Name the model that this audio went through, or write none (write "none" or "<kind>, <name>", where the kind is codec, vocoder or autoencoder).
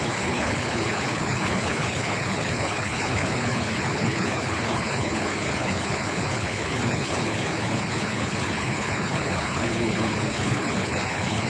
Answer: codec, HILCodec